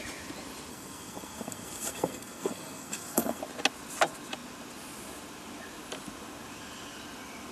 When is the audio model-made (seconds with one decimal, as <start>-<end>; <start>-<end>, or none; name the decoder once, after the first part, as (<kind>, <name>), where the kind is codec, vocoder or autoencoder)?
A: 0.7-3.4 (codec, SNAC)